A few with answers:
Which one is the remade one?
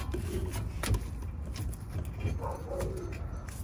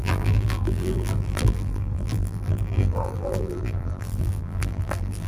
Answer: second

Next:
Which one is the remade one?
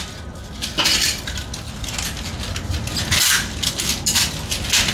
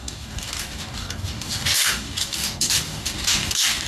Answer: second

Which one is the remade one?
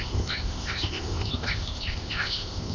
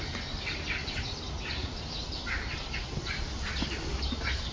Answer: first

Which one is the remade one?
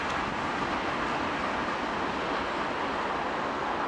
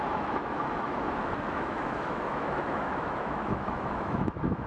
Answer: second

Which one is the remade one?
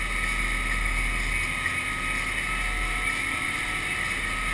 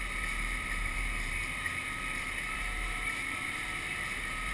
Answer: second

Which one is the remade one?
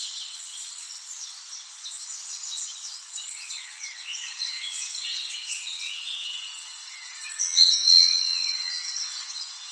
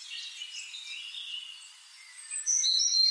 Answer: first